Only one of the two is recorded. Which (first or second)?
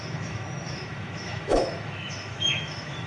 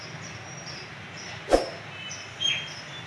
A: second